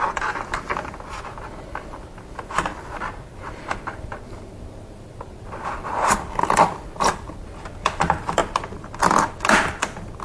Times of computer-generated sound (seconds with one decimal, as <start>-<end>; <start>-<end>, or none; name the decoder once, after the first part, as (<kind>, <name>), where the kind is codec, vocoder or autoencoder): 0.0-8.4 (vocoder, BigVGAN v2)